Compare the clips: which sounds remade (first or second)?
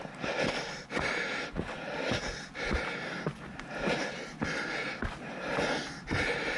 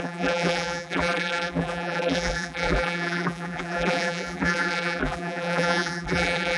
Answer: second